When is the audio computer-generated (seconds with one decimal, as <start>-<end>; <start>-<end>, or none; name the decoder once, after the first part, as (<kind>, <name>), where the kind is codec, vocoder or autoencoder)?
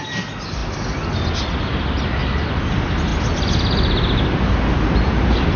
none